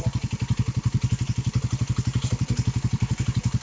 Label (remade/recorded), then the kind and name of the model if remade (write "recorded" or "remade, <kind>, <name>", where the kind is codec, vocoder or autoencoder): recorded